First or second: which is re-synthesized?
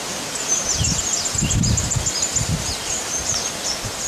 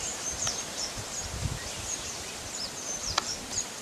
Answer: second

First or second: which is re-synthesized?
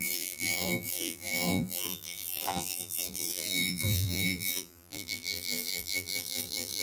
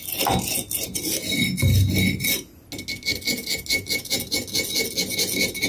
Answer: first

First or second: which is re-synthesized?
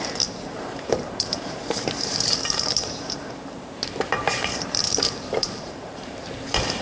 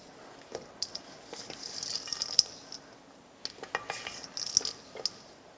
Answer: first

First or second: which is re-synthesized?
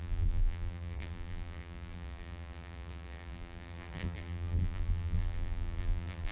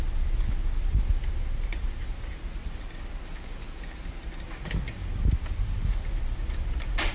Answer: first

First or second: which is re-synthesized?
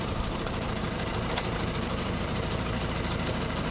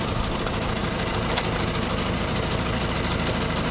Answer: first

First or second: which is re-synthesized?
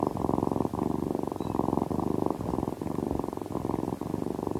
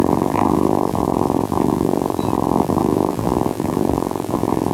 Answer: second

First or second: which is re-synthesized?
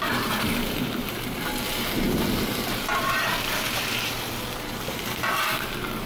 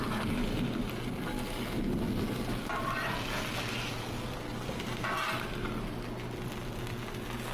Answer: first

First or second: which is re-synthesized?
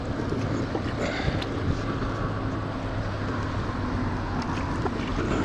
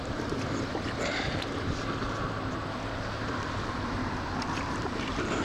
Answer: second